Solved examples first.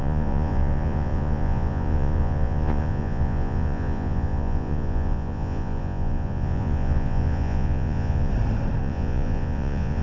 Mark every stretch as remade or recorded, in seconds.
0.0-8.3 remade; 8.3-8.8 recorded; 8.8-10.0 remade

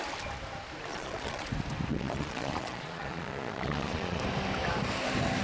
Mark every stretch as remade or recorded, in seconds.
0.0-0.9 recorded; 0.9-1.5 remade; 1.5-1.9 recorded; 1.9-4.2 remade; 4.2-5.4 recorded